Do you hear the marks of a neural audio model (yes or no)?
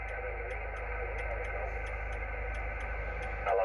no